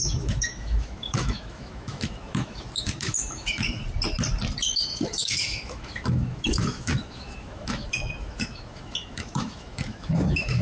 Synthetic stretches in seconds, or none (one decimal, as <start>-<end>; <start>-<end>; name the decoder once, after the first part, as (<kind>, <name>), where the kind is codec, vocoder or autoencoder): 0.0-3.8 (autoencoder, DAC-VAE); 4.7-10.6